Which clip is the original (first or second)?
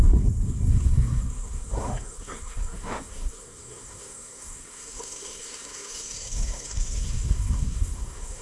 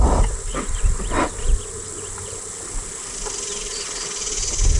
second